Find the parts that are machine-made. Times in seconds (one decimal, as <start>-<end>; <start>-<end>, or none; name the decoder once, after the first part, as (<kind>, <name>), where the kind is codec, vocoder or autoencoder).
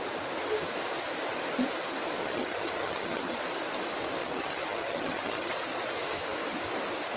2.2-3.4 (vocoder, HiFi-GAN); 4.2-5.5